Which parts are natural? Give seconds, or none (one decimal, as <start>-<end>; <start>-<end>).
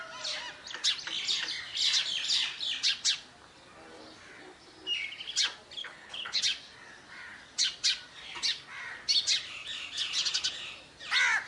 0.0-5.8; 6.4-11.5